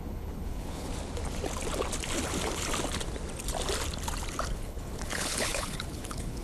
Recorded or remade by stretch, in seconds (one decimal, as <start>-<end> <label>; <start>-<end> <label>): 0.0-0.9 remade; 0.9-4.5 recorded; 4.5-6.4 remade